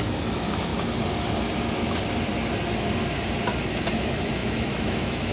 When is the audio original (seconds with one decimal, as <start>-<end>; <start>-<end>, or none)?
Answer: 0.7-3.9